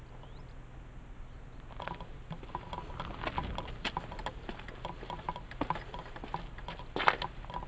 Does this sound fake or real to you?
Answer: real